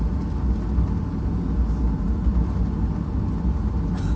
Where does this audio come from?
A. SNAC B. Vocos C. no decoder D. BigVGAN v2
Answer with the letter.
C